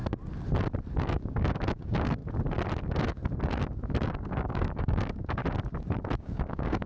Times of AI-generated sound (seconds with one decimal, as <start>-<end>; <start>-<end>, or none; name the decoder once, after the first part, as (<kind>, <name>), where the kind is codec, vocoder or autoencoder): 1.0-2.2 (codec, DAC); 2.8-3.2; 4.0-5.4; 6.2-6.9